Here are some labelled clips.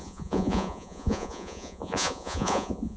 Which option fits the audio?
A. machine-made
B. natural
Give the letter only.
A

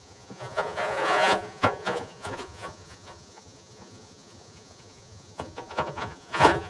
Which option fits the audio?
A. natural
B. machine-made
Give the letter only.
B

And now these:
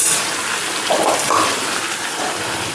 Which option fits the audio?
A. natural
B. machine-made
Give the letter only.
A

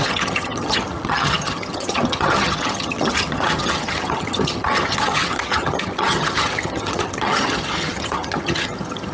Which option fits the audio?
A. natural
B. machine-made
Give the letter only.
B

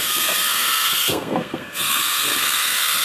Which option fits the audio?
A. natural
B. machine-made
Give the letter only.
B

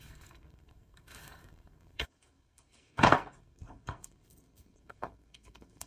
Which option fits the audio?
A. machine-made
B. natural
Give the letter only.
A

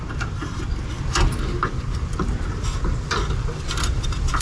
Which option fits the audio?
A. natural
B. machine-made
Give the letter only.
B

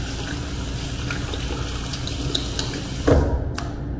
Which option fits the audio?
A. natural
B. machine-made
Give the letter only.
A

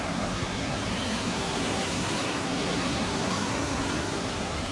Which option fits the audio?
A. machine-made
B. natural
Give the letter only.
A